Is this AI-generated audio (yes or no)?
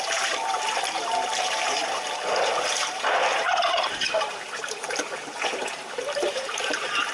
yes